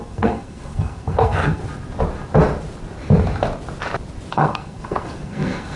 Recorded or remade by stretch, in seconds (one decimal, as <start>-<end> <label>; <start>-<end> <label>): 0.0-1.6 remade; 1.6-4.3 recorded; 4.3-5.8 remade